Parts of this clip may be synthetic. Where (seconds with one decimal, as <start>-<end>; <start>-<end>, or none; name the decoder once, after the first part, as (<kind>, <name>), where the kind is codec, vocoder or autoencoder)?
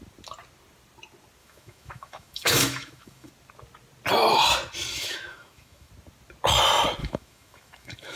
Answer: 1.4-3.3 (autoencoder, DAC-VAE); 4.9-5.9; 7.0-8.2